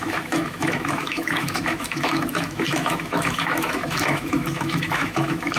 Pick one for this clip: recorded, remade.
remade